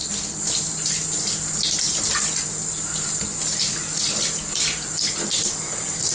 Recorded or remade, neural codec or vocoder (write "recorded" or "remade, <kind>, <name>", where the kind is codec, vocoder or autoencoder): recorded